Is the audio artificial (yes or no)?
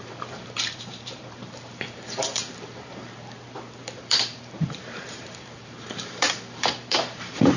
yes